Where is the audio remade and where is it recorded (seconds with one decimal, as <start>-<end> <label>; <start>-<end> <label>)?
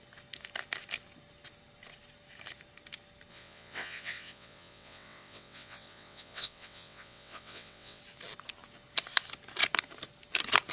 0.0-3.3 recorded; 3.3-8.0 remade; 8.0-10.7 recorded